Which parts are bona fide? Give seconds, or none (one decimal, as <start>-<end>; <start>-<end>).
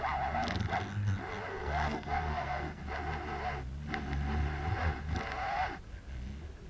0.0-1.5; 2.8-6.7